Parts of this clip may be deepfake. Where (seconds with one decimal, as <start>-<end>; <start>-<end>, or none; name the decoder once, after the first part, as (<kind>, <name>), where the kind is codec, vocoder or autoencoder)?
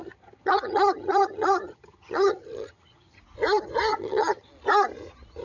0.0-3.2 (vocoder, HiFi-GAN); 3.9-4.5